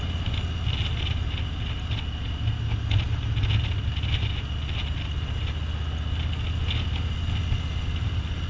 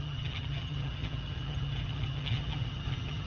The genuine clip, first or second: first